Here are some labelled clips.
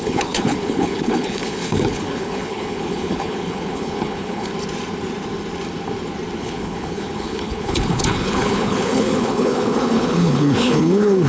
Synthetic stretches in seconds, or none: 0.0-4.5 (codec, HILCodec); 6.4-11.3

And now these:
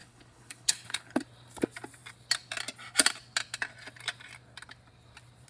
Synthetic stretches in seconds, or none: 0.0-1.2 (codec, HILCodec)

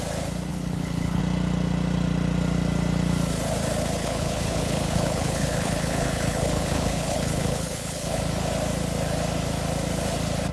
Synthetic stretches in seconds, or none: 0.5-1.2 (codec, HILCodec); 4.0-8.2